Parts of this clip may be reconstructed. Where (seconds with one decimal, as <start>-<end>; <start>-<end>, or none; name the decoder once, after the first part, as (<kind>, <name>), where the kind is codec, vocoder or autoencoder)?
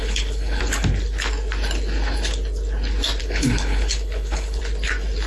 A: 0.0-0.6 (codec, HILCodec); 3.2-4.6